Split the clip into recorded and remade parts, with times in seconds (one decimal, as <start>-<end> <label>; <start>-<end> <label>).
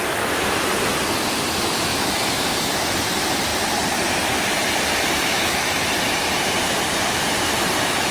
0.0-1.9 recorded; 1.9-2.7 remade; 2.7-5.3 recorded; 5.3-5.8 remade; 5.8-8.1 recorded